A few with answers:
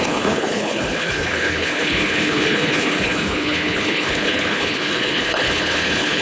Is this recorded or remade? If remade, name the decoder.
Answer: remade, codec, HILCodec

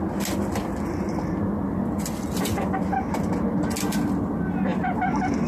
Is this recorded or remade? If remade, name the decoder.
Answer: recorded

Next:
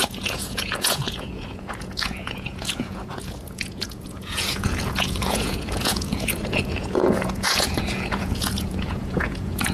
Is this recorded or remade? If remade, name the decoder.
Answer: remade, vocoder, Vocos